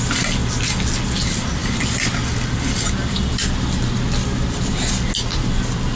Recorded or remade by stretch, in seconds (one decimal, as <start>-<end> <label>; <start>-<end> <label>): 0.0-6.0 recorded